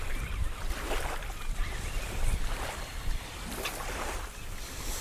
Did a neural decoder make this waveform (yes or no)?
no